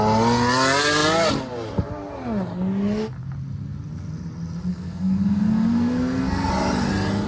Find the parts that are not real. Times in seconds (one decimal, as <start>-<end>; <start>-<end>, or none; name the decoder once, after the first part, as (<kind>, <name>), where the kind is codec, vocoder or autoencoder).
4.7-6.5 (codec, SNAC)